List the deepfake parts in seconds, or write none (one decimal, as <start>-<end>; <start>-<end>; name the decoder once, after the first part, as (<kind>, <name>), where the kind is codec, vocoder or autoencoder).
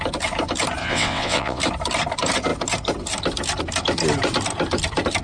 0.8-1.6 (vocoder, WaveNeXt)